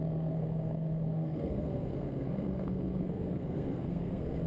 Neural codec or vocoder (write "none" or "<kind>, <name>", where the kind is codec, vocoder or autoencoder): codec, SNAC